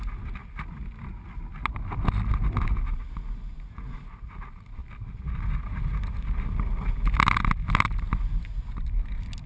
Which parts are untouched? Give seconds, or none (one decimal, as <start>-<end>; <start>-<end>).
0.0-9.5